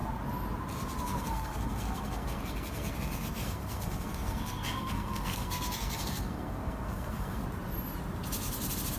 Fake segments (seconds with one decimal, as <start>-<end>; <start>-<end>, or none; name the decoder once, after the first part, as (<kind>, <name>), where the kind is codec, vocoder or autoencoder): 1.0-7.4 (codec, SNAC)

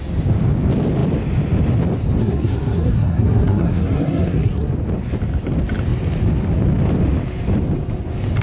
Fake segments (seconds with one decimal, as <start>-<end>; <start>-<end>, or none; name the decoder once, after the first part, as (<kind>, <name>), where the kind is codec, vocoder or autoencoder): 2.2-4.7 (codec, SNAC)